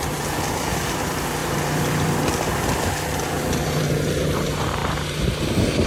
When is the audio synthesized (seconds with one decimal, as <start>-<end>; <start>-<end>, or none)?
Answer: 1.4-3.9; 4.8-5.3